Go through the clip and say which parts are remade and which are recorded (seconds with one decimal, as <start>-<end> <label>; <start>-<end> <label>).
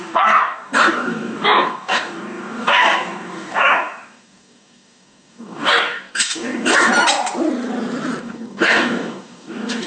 0.0-6.9 remade; 6.9-8.2 recorded; 8.2-9.9 remade